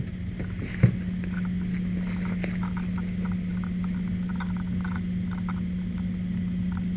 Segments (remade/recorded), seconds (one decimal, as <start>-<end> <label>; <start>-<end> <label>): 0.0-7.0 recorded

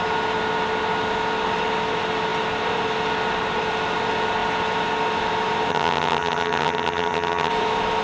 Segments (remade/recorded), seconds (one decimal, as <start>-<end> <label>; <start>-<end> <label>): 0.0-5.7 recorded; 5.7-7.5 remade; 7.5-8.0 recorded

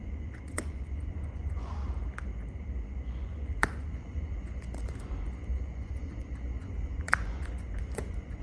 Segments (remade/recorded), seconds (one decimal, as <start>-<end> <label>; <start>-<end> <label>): 0.0-1.8 remade; 1.8-2.8 recorded; 2.8-8.4 remade